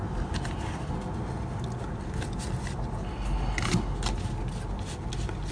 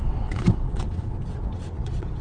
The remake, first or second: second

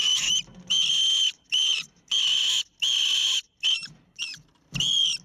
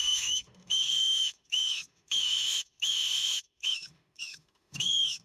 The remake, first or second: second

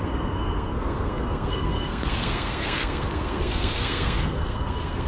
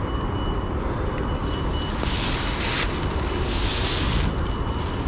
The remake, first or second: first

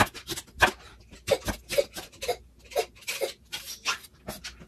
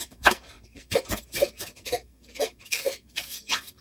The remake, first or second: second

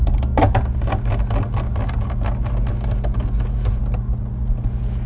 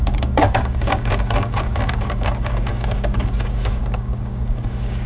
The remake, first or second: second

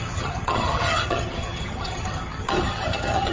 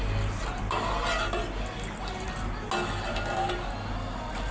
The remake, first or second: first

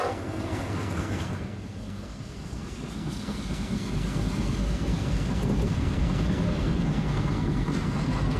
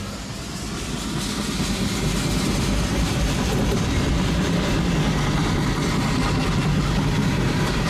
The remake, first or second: first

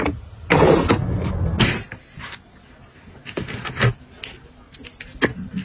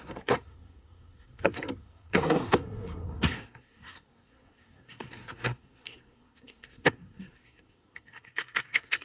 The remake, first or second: second